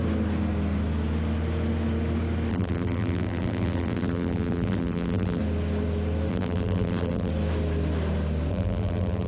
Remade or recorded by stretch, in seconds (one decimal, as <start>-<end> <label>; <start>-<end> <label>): 0.0-2.5 recorded; 2.5-5.4 remade; 5.4-6.3 recorded; 6.3-7.3 remade; 7.3-8.5 recorded; 8.5-9.3 remade